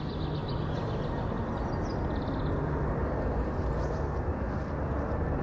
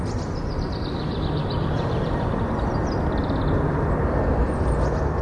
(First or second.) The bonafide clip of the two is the first